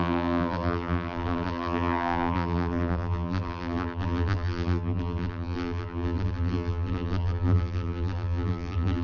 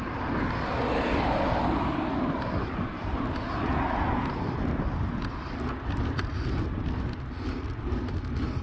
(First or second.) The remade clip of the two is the first